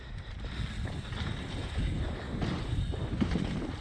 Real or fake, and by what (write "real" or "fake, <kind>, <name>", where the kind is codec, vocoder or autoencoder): real